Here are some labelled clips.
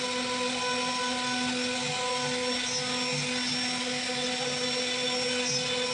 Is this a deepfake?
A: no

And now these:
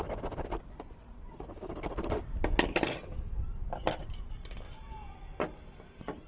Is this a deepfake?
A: no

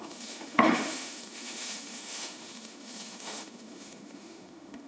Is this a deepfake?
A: yes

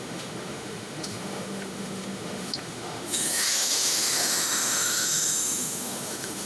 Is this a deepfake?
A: yes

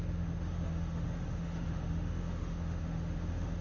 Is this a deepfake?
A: yes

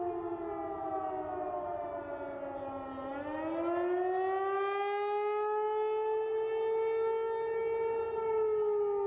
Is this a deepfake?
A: no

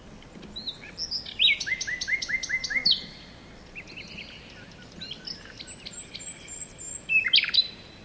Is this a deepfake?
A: no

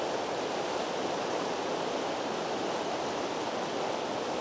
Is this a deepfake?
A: no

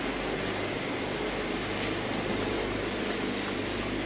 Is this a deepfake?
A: no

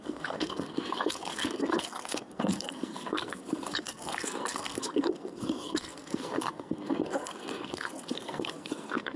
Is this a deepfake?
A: yes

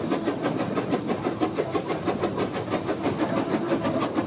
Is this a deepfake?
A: no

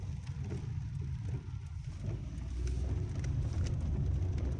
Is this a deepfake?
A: no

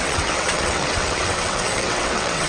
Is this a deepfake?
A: yes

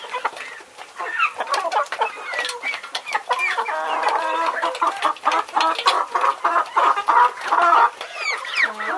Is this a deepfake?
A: no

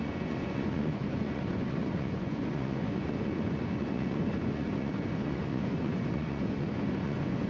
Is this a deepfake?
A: yes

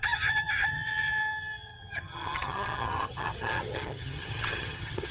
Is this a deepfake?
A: yes